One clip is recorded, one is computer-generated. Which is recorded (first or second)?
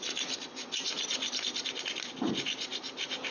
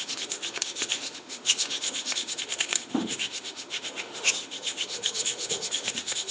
first